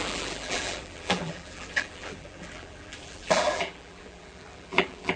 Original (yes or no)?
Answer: no